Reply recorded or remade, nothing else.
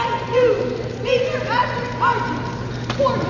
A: recorded